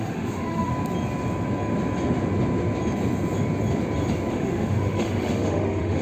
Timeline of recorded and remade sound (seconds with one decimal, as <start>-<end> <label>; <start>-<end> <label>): 0.0-0.7 remade; 0.7-4.3 recorded; 4.3-6.0 remade